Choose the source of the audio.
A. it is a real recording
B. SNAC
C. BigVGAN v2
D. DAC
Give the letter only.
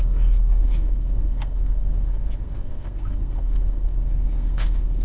B